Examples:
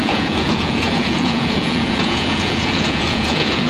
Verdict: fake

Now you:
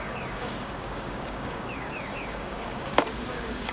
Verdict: fake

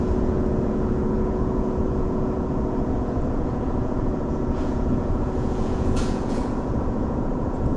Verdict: fake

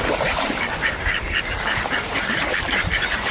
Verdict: fake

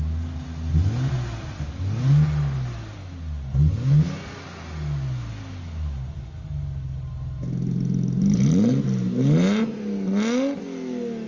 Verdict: real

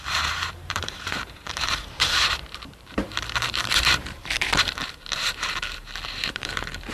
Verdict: fake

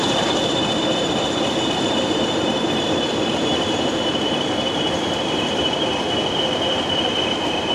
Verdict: fake